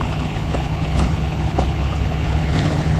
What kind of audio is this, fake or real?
fake